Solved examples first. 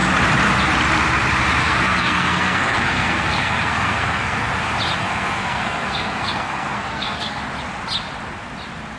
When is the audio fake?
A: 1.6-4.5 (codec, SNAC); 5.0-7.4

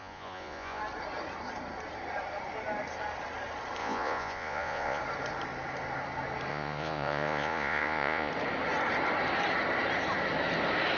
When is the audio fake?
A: 0.0-0.8 (vocoder, Vocos); 3.8-5.0; 6.5-8.3